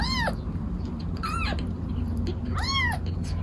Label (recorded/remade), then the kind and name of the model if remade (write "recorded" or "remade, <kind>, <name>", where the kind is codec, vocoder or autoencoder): recorded